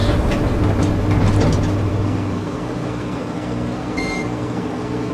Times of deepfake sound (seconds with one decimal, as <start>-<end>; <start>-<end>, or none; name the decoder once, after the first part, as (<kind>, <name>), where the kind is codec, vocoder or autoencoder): 1.9-5.1 (codec, SNAC)